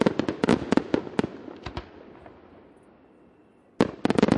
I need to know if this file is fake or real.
real